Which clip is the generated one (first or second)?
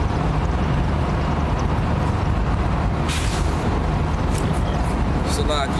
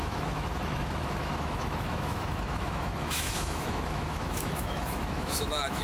second